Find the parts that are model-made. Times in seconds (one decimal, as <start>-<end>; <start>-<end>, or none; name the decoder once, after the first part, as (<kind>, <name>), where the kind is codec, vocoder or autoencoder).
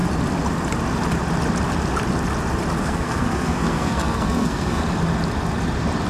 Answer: 2.8-4.8 (codec, SNAC)